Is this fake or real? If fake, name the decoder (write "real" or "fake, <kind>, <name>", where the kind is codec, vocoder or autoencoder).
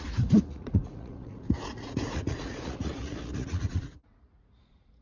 fake, vocoder, Vocos